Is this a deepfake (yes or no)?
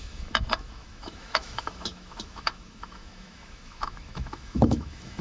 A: yes